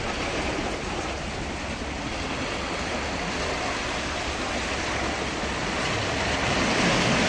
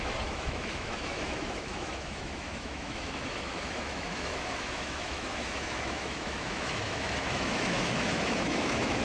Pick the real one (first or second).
first